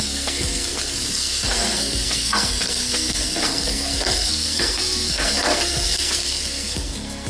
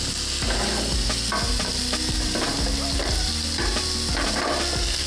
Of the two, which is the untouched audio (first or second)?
second